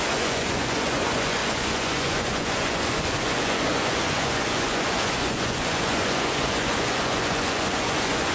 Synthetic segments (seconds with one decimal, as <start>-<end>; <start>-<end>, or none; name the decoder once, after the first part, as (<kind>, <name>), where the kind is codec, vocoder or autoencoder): 0.0-8.3 (vocoder, Vocos)